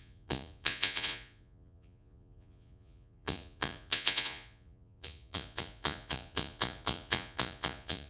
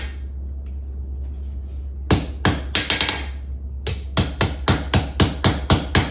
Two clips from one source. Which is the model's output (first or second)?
first